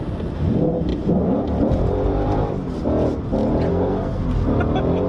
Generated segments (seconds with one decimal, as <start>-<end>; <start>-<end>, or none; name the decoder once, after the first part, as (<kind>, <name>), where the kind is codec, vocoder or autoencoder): 3.7-4.2 (codec, SNAC)